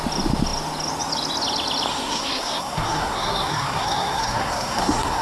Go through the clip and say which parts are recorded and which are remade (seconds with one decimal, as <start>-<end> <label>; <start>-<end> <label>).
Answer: 0.0-1.9 recorded; 1.9-5.2 remade